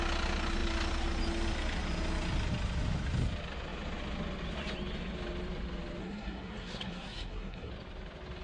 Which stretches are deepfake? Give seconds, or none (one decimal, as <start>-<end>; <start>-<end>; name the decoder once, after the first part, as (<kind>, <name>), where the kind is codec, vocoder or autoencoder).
6.0-7.7 (codec, SNAC)